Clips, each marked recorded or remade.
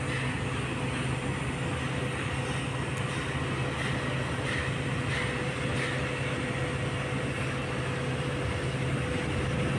recorded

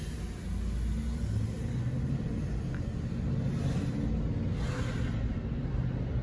recorded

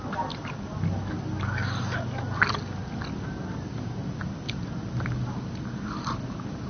recorded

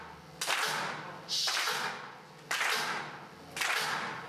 recorded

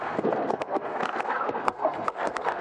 remade